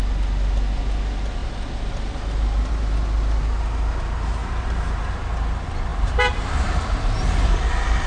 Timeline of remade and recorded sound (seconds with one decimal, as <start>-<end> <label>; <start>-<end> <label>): 0.0-4.4 recorded; 4.4-5.1 remade; 5.1-5.9 recorded; 5.9-7.6 remade; 7.6-8.1 recorded